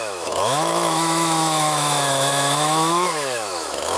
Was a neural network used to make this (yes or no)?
yes